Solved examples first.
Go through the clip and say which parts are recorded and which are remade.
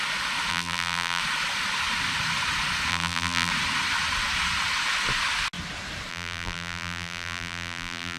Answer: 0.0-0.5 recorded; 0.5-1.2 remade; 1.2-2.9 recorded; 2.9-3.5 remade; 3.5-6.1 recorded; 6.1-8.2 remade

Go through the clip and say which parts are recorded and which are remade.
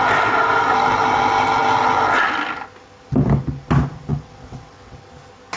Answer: 0.0-4.1 recorded; 4.1-5.0 remade; 5.0-5.6 recorded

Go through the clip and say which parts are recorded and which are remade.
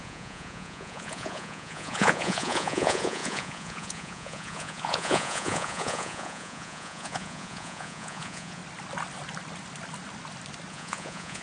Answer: 0.0-8.6 remade; 8.6-10.7 recorded; 10.7-11.4 remade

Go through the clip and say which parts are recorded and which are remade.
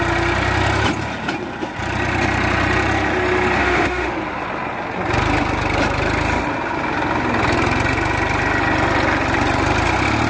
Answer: 0.0-3.6 recorded; 3.6-4.1 remade; 4.1-10.3 recorded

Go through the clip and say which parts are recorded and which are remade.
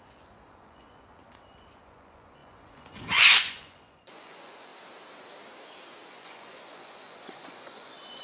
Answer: 0.0-4.7 remade; 4.7-6.1 recorded; 6.1-8.2 remade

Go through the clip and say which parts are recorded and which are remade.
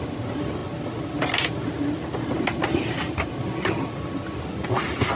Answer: 0.0-5.2 recorded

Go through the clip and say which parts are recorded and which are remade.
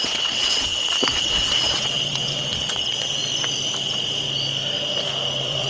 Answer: 0.0-3.2 remade; 3.2-5.3 recorded; 5.3-5.7 remade